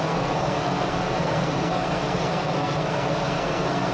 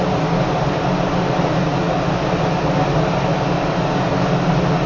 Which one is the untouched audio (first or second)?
second